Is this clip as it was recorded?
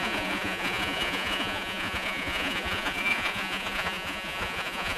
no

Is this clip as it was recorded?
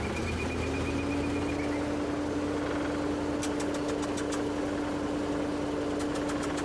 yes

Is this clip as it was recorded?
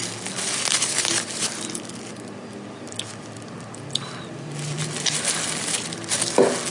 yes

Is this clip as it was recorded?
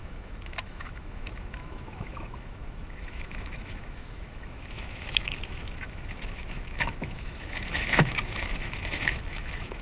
no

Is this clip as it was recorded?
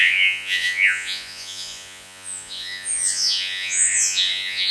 no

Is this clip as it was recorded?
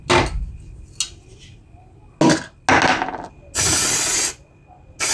yes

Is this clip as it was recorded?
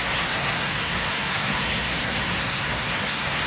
no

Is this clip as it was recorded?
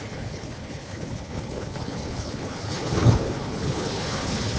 no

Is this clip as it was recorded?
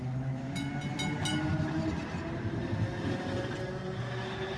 yes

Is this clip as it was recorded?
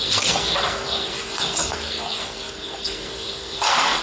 no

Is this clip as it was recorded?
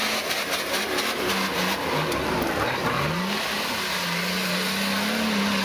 yes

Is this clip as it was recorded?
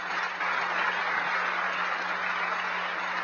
yes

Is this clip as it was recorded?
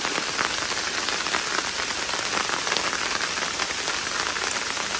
yes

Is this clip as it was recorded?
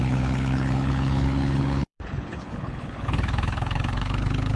no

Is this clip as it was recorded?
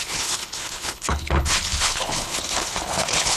no